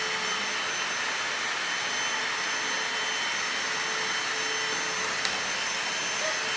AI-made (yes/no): no